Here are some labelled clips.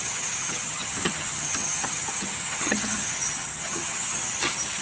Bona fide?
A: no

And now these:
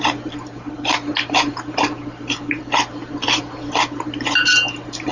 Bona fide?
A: yes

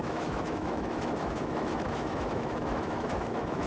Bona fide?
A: no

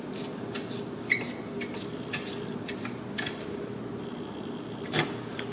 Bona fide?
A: yes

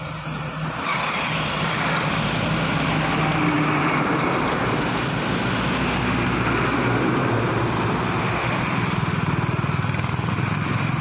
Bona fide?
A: yes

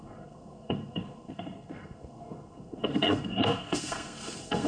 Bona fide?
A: no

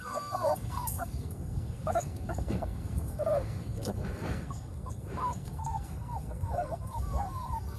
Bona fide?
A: no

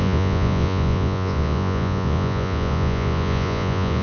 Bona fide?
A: no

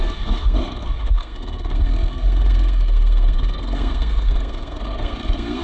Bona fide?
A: no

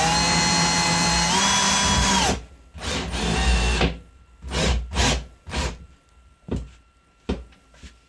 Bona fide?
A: yes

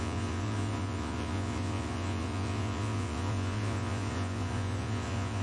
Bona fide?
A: no